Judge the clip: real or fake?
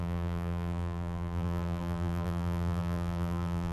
fake